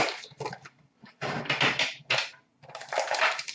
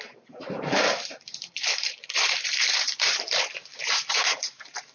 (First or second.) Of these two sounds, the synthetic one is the second